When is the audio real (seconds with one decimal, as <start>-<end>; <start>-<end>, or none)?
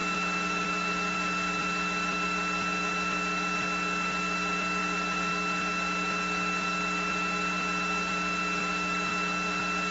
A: 1.6-4.8; 5.3-9.9